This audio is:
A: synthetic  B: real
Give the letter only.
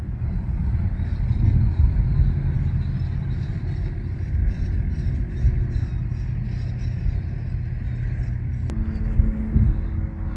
B